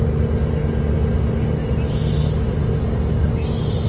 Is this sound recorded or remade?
recorded